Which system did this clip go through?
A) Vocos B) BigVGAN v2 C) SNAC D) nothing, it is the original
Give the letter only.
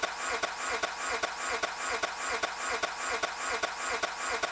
D